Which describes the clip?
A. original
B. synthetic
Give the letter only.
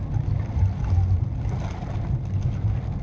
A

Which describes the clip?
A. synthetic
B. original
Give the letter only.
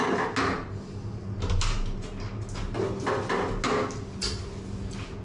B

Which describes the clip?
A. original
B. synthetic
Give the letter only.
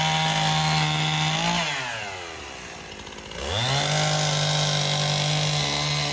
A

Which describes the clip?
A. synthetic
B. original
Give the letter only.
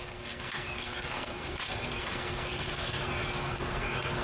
A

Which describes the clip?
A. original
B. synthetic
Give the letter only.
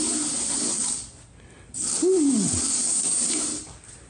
A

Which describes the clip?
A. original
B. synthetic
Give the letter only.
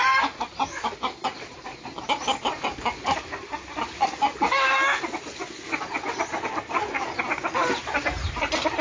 A